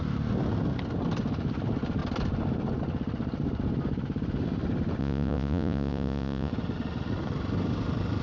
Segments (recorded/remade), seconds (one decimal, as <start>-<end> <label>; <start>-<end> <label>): 0.0-5.0 recorded; 5.0-6.5 remade; 6.5-8.2 recorded